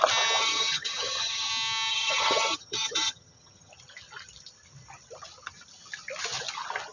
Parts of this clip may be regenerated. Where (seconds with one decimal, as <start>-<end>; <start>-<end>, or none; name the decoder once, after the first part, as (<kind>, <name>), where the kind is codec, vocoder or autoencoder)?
0.4-1.5 (vocoder, HiFi-GAN); 1.9-3.7